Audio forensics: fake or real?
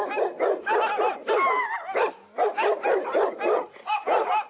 real